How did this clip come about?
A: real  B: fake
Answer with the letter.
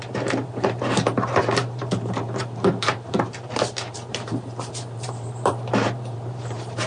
B